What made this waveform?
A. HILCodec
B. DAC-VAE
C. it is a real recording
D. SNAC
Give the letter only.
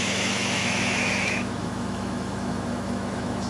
B